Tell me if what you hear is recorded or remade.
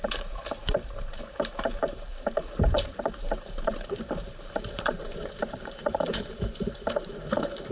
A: remade